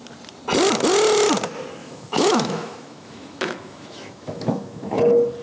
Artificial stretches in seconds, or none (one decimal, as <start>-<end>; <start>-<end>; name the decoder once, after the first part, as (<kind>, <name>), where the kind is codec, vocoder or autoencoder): 1.8-5.0 (autoencoder, DAC-VAE)